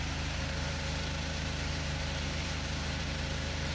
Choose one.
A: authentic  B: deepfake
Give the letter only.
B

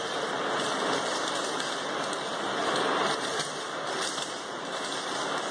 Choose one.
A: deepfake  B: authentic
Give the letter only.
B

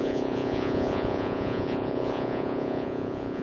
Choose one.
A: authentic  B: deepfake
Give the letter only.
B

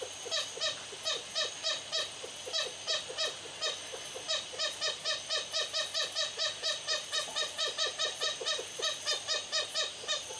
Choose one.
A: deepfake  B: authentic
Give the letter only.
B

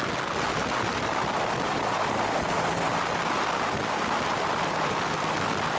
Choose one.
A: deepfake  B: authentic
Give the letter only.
B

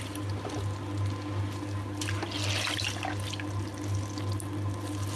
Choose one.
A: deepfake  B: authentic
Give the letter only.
B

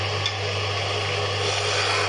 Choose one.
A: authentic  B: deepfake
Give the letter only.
A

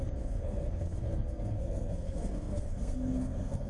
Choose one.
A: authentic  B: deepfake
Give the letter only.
B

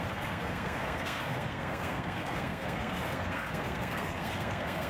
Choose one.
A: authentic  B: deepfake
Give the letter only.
B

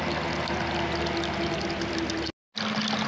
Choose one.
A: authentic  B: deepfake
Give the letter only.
A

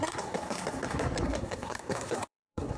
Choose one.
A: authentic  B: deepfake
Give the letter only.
B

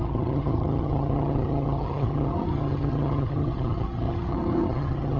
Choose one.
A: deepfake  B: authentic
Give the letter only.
A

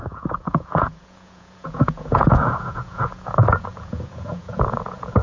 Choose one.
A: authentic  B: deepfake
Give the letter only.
B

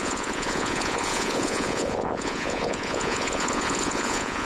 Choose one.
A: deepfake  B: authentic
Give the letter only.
A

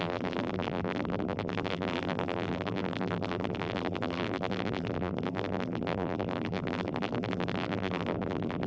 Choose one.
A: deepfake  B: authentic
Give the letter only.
A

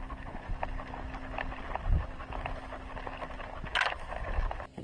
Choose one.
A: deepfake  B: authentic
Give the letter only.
B